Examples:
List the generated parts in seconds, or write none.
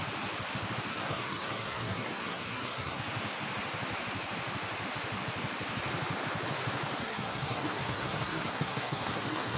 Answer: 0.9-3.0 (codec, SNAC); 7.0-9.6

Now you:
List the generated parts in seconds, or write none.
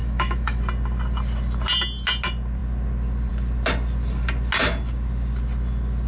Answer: 0.0-0.6 (autoencoder, DAC-VAE)